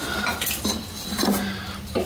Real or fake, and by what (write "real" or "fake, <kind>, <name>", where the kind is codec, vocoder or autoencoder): real